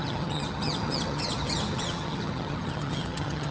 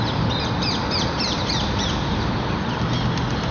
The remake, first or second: first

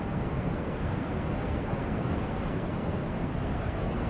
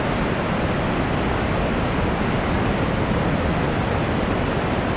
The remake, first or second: first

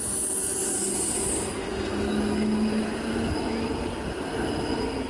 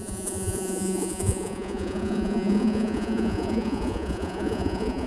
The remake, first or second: second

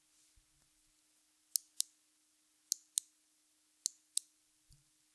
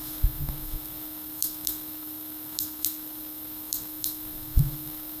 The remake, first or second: second